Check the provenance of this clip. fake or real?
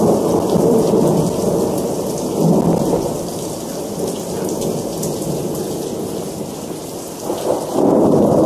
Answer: real